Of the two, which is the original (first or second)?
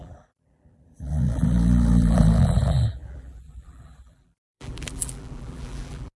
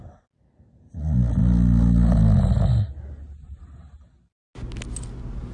second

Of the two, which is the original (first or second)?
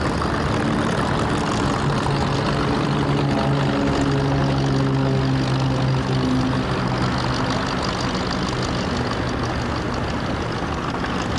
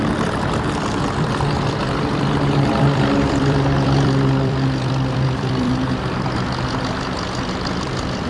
first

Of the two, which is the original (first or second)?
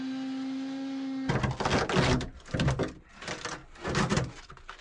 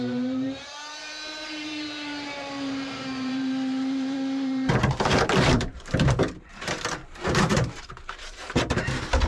first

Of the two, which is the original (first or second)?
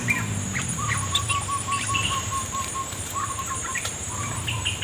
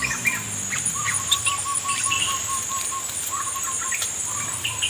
second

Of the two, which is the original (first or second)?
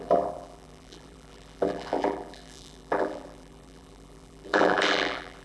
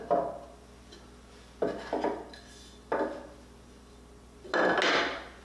second